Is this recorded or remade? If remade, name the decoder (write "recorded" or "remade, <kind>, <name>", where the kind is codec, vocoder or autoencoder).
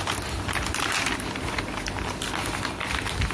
recorded